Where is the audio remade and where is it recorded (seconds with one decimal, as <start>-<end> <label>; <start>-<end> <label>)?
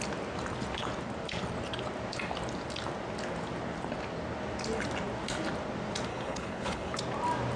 0.0-6.1 recorded; 6.1-7.0 remade; 7.0-7.6 recorded